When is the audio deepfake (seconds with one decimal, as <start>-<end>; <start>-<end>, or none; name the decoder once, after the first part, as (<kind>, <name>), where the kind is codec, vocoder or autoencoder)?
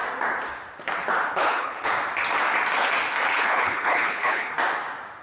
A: 1.3-1.9 (codec, HILCodec); 3.3-4.5